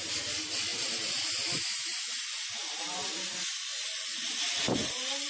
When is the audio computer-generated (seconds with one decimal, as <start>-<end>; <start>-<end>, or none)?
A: 0.7-1.2; 1.9-3.3; 3.7-5.3